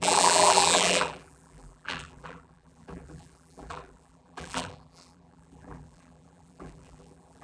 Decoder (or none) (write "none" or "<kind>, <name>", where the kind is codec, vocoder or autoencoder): vocoder, BigVGAN v2